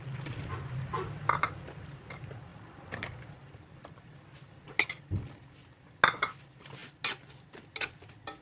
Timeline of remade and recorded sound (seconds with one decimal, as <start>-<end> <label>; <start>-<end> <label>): 0.0-8.4 recorded